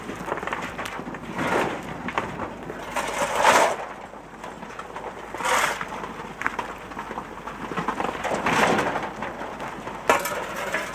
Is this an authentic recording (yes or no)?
no